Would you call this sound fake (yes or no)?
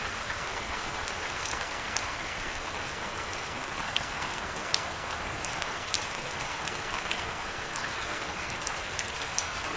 yes